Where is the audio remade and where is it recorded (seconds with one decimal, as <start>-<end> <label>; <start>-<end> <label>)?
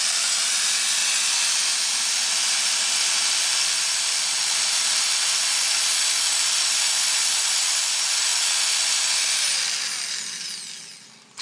0.0-11.4 recorded